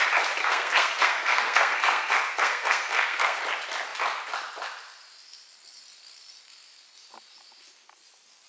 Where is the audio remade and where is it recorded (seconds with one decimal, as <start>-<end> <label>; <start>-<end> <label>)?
0.0-0.4 recorded; 0.4-3.4 remade; 3.4-8.5 recorded